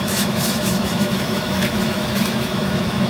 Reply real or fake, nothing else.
fake